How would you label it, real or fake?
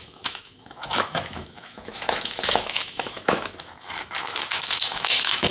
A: fake